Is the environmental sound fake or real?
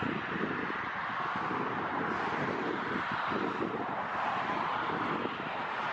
real